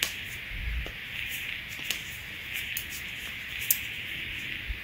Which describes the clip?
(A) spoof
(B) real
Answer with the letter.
B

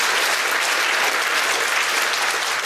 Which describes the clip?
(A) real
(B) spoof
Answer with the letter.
A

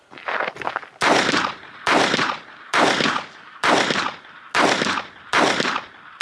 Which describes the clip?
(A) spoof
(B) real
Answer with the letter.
B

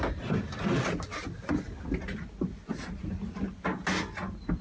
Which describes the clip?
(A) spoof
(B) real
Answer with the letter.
B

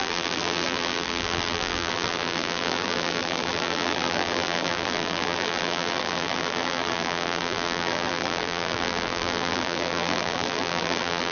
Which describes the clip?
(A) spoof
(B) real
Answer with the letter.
A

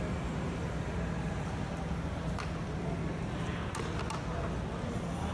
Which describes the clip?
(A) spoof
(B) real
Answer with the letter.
B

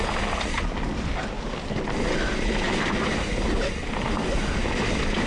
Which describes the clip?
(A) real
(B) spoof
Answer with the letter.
A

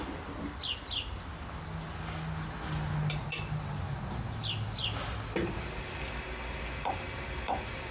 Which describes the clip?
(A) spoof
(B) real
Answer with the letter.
B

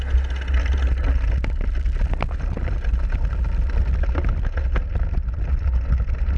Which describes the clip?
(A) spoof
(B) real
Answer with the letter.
B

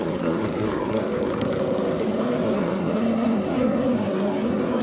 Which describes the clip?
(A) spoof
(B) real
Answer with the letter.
A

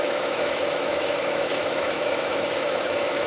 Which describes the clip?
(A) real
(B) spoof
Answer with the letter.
B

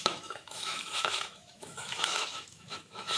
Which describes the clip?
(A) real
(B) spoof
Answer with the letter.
B